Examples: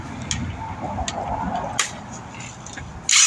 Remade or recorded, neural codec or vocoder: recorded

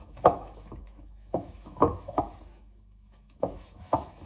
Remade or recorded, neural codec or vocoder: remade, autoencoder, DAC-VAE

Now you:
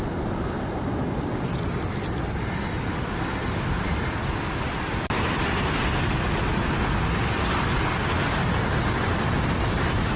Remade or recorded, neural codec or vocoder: recorded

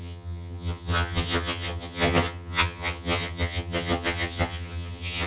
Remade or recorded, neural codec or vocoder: remade, vocoder, HiFi-GAN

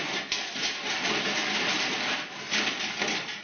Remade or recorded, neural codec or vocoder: recorded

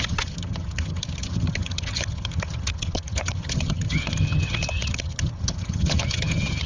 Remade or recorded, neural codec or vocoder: remade, vocoder, HiFi-GAN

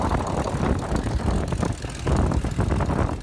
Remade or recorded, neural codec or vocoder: recorded